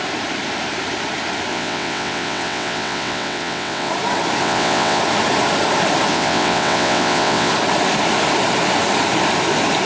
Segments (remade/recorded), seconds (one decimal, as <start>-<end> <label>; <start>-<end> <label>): 0.0-1.5 recorded; 1.5-3.9 remade; 3.9-4.4 recorded; 4.4-5.0 remade; 5.0-6.1 recorded; 6.1-7.5 remade; 7.5-9.9 recorded